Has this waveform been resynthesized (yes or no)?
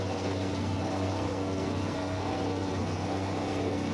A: yes